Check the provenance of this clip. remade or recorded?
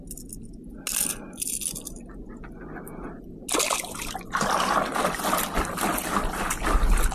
recorded